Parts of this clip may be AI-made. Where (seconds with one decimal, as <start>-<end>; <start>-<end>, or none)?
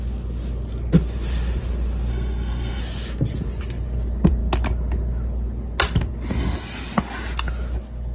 2.1-2.8